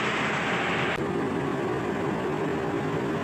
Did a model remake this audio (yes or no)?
no